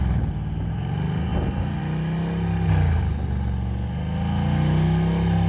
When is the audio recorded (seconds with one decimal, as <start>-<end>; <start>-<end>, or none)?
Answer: 0.0-5.5